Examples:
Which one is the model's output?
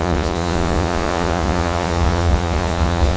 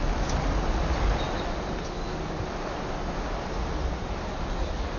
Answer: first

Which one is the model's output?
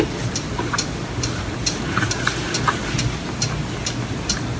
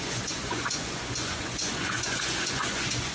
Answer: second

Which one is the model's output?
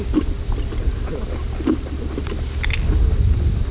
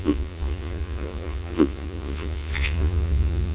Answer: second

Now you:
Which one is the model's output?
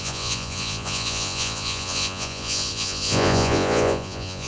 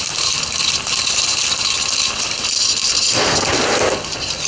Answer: first